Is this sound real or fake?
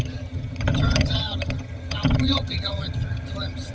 fake